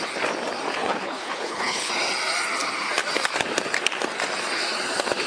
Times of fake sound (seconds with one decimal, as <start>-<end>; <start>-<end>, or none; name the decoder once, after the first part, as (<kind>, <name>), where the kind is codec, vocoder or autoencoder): 0.7-1.9 (codec, HILCodec)